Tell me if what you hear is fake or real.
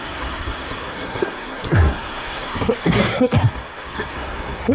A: fake